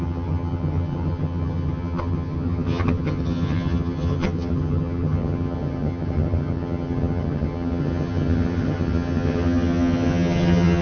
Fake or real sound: fake